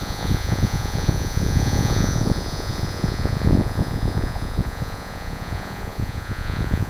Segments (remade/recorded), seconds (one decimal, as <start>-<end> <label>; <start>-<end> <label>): 0.0-6.9 remade

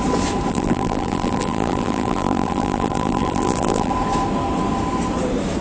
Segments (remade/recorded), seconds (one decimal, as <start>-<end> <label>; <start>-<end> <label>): 0.0-0.5 recorded; 0.5-3.9 remade; 3.9-5.6 recorded

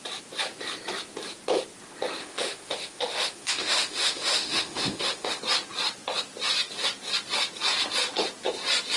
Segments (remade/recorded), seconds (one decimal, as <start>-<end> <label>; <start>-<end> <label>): 0.0-2.2 recorded; 2.2-5.4 remade; 5.4-9.0 recorded

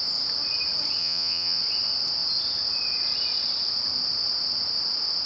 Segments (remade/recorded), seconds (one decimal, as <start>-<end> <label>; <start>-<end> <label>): 0.0-1.0 recorded; 1.0-1.6 remade; 1.6-5.2 recorded